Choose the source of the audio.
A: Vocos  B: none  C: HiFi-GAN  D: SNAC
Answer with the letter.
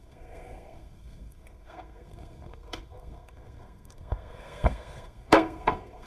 D